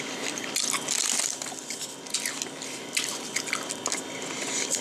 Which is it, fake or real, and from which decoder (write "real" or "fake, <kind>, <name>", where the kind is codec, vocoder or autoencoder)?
fake, vocoder, BigVGAN v2